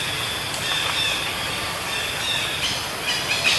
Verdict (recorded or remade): recorded